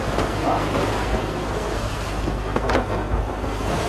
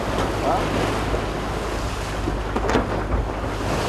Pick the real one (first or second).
second